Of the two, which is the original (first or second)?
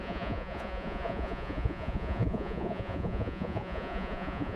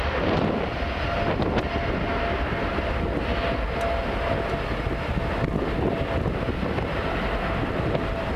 second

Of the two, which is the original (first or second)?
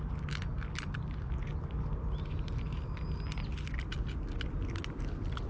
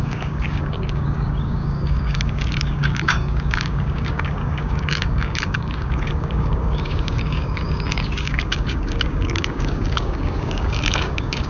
first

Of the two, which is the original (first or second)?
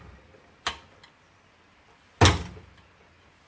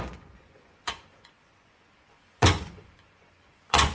first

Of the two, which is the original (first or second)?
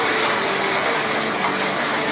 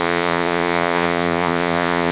first